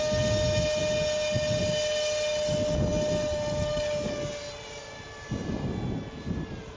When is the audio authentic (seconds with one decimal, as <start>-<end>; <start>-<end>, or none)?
0.0-6.8